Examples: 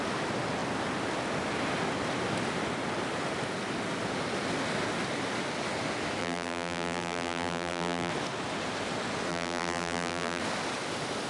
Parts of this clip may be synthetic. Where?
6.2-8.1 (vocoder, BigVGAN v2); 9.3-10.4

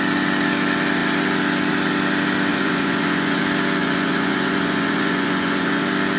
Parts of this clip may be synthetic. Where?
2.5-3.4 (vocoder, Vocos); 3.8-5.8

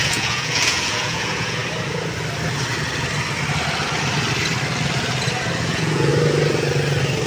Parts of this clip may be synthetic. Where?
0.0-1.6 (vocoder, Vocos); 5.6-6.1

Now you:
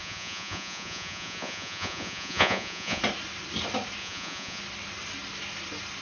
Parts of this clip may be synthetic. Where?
0.0-3.0 (vocoder, Vocos); 4.0-4.6

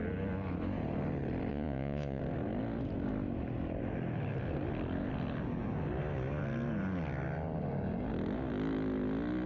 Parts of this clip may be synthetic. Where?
1.5-2.2 (vocoder, Vocos)

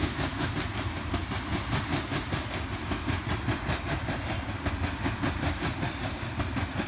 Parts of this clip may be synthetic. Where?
0.0-0.5 (autoencoder, DAC-VAE)